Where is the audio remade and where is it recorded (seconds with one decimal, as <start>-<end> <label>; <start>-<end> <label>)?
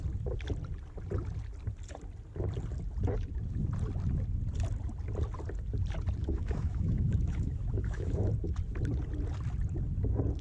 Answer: 0.0-6.2 recorded; 6.2-8.3 remade; 8.3-10.4 recorded